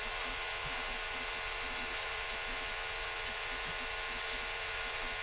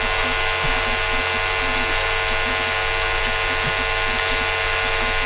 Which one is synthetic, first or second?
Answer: first